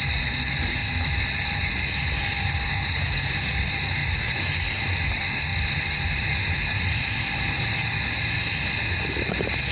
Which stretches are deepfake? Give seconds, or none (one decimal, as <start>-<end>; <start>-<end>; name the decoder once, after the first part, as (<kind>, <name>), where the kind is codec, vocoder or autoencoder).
0.0-4.0 (vocoder, BigVGAN v2); 5.0-5.5; 8.9-9.7